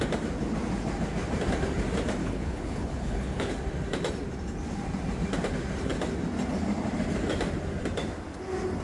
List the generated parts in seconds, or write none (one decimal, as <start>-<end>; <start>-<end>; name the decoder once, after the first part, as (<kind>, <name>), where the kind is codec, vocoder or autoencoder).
2.2-3.5 (codec, HILCodec)